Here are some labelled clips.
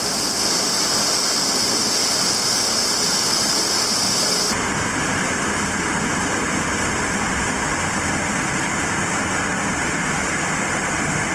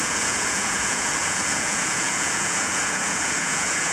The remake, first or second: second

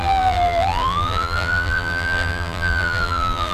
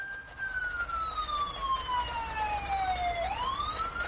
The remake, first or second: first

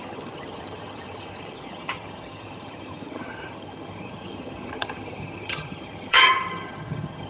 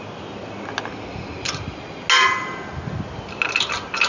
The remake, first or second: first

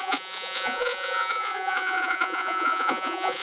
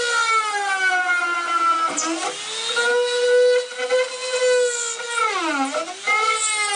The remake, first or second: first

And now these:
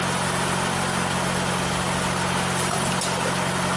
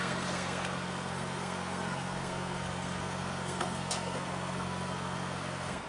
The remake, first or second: second